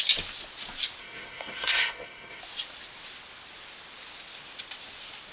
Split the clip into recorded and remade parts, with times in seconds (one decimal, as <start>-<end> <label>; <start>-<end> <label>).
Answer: 0.0-1.0 recorded; 1.0-2.4 remade; 2.4-5.3 recorded